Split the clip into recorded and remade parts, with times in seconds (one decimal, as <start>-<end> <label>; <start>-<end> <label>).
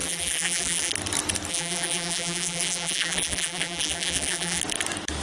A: 0.0-0.9 remade; 0.9-1.5 recorded; 1.5-4.6 remade; 4.6-5.2 recorded